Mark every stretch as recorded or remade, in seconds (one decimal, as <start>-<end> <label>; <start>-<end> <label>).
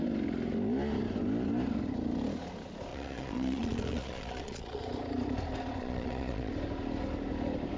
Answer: 0.0-2.9 recorded; 2.9-4.8 remade; 4.8-5.8 recorded; 5.8-6.5 remade; 6.5-7.8 recorded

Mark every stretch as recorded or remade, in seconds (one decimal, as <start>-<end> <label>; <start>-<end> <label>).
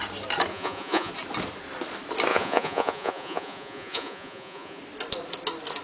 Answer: 0.0-0.5 recorded; 0.5-1.1 remade; 1.1-2.3 recorded; 2.3-4.8 remade; 4.8-5.8 recorded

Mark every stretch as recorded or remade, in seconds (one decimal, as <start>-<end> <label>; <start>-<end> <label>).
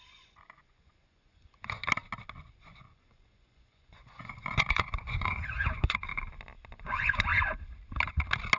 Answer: 0.0-1.8 remade; 1.8-2.3 recorded; 2.3-6.1 remade; 6.1-6.8 recorded; 6.8-7.3 remade; 7.3-8.6 recorded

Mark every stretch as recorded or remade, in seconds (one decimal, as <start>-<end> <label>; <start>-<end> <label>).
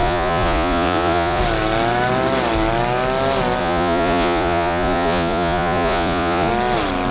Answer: 0.0-1.4 remade; 1.4-3.6 recorded; 3.6-6.5 remade; 6.5-7.1 recorded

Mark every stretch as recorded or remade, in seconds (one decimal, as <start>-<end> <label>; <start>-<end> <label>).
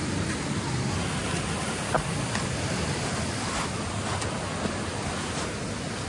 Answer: 0.0-6.1 recorded